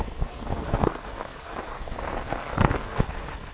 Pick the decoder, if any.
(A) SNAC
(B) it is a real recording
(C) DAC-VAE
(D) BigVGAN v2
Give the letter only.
A